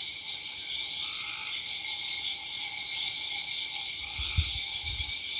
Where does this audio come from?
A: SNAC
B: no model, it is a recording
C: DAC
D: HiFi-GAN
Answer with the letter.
B